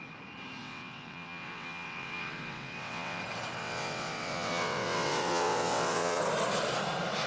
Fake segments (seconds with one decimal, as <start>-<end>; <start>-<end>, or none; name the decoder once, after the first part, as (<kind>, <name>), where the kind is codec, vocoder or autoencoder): 0.6-3.2 (vocoder, WaveNeXt); 3.6-6.2